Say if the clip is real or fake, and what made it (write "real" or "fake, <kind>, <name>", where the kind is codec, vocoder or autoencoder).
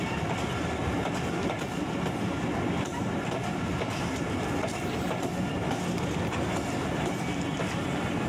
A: real